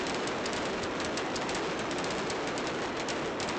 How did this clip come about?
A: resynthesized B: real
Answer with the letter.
B